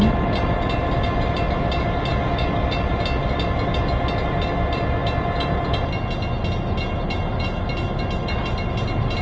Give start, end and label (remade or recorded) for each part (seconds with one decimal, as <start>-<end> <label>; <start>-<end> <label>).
0.0-9.2 recorded